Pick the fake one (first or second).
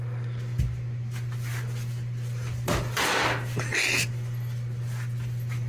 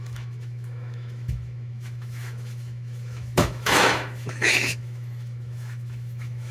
second